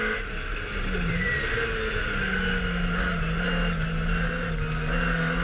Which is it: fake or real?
real